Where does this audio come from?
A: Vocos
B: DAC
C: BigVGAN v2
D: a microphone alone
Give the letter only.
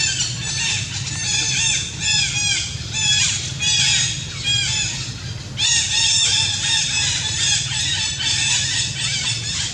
D